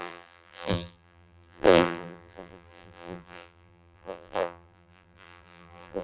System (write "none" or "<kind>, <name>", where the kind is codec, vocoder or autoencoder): vocoder, BigVGAN v2